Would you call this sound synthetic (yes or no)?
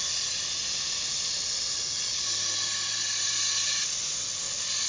no